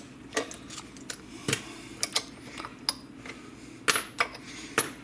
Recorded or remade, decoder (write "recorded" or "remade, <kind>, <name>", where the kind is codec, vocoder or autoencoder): recorded